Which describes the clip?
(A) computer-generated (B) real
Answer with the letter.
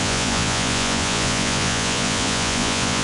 A